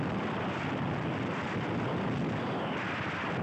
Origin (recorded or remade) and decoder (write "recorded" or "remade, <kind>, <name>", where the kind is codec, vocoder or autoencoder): remade, vocoder, BigVGAN v2